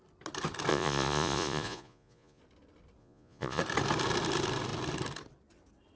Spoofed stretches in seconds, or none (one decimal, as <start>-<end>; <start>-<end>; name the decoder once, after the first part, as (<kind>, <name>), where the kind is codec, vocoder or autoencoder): 0.7-2.4 (vocoder, Vocos); 3.0-3.6